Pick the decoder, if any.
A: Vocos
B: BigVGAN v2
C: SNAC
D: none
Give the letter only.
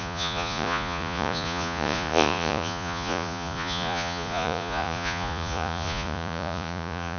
A